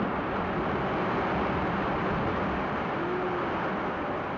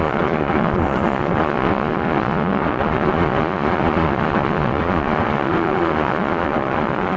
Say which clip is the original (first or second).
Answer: first